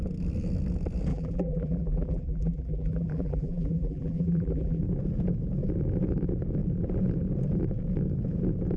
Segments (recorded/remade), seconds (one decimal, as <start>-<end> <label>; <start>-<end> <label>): 0.0-1.1 recorded; 1.1-4.8 remade; 4.8-8.8 recorded